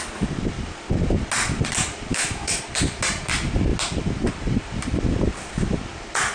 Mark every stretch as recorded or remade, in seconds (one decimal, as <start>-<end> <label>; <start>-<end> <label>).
0.0-2.1 recorded; 2.1-2.6 remade; 2.6-6.3 recorded